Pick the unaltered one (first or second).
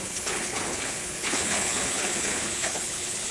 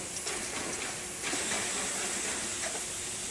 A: second